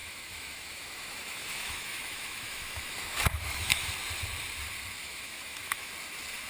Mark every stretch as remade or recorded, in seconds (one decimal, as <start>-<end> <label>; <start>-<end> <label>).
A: 0.0-3.9 remade; 3.9-5.0 recorded; 5.0-5.9 remade; 5.9-6.5 recorded